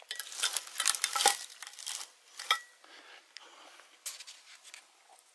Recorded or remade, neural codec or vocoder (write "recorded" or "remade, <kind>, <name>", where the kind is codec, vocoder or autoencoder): recorded